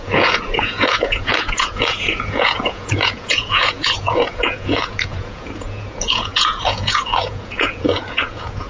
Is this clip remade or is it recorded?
remade